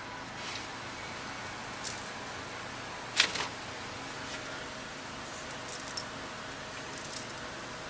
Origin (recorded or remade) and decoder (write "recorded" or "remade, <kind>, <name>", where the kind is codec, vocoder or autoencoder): recorded